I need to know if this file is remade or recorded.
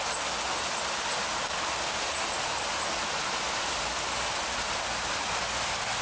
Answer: recorded